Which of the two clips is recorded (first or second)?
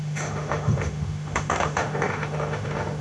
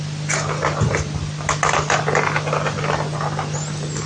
second